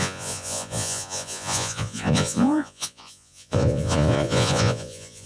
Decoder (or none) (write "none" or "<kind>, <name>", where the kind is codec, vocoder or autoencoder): vocoder, Vocos